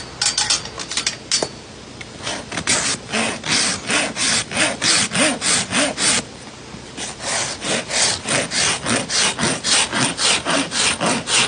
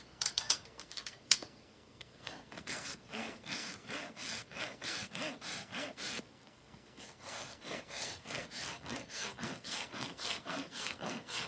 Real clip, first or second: first